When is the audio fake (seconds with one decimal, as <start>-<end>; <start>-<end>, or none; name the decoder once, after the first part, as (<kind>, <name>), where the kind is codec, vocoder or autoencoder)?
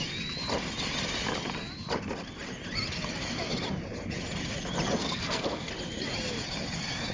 5.0-5.7 (codec, SNAC)